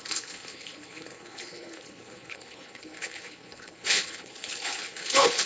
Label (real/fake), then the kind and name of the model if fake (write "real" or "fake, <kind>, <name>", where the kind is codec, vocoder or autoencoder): fake, codec, HILCodec